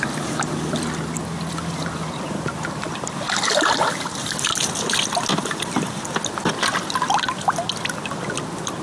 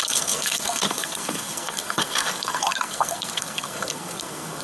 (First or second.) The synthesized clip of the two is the second